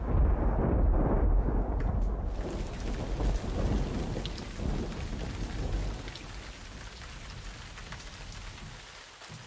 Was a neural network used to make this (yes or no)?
no